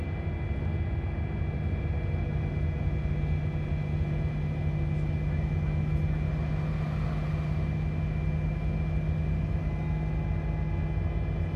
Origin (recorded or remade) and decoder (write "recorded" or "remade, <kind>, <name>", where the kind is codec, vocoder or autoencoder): recorded